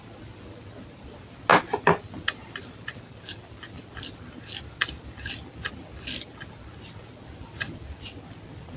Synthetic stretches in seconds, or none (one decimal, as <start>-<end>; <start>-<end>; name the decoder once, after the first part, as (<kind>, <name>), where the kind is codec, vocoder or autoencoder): none